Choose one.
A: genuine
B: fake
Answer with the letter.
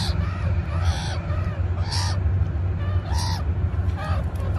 B